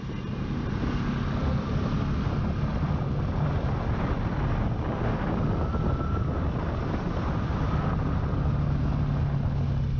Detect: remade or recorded recorded